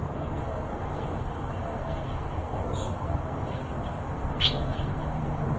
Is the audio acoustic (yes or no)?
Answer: no